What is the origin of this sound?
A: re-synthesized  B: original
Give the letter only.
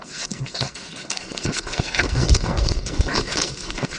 A